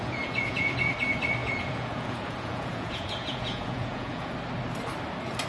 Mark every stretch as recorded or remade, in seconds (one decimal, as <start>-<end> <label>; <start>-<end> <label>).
0.0-0.9 remade; 0.9-1.4 recorded; 1.4-4.3 remade; 4.3-5.5 recorded

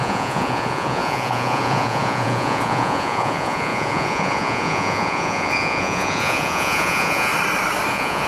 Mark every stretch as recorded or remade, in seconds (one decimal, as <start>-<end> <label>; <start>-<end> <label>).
0.0-7.3 remade; 7.3-7.9 recorded; 7.9-8.3 remade

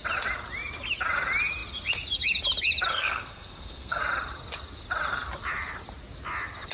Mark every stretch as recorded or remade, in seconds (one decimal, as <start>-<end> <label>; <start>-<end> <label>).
0.0-2.9 recorded; 2.9-4.0 remade; 4.0-6.7 recorded

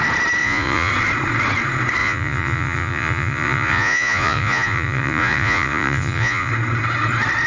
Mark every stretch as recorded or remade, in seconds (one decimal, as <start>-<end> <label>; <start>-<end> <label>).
0.0-0.4 recorded; 0.4-0.9 remade; 0.9-2.0 recorded; 2.0-6.5 remade; 6.5-7.5 recorded

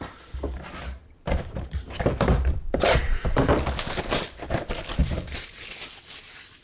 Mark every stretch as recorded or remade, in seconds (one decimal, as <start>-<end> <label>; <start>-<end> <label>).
0.0-1.0 recorded; 1.0-3.5 remade; 3.5-5.0 recorded; 5.0-5.6 remade; 5.6-6.6 recorded

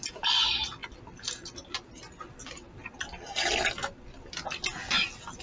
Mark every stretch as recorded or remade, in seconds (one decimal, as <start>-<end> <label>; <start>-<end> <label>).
0.0-5.4 recorded

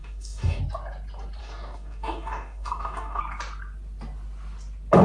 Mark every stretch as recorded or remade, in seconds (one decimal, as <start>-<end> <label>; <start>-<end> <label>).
0.0-0.6 remade; 0.6-1.4 recorded; 1.4-3.2 remade; 3.2-5.0 recorded

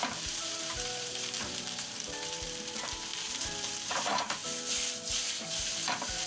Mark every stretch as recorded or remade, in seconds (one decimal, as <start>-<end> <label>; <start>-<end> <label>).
0.0-4.4 remade; 4.4-5.2 recorded; 5.2-6.3 remade